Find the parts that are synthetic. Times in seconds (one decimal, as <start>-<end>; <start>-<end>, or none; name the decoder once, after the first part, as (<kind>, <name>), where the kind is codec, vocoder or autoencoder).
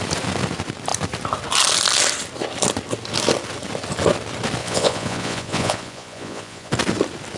4.6-6.7 (vocoder, Vocos)